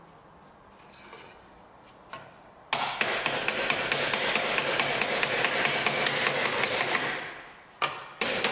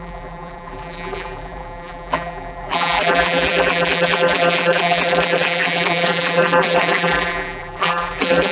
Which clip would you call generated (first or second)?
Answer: second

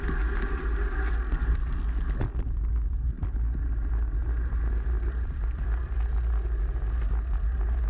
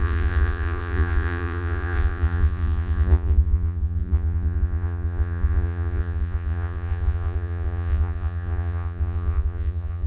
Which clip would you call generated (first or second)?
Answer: second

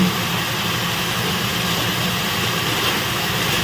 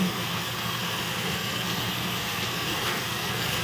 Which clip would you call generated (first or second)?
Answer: second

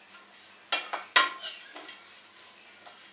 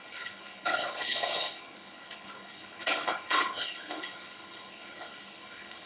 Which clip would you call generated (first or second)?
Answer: second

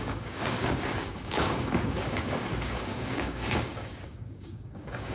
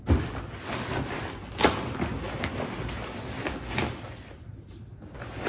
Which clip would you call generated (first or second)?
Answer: first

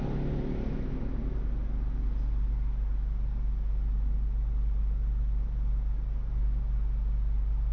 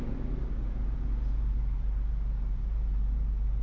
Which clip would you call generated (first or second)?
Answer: second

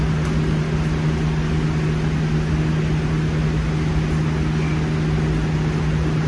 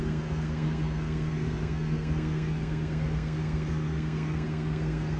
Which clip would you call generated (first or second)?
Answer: second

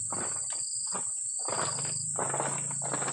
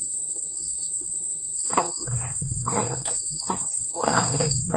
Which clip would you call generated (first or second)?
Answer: second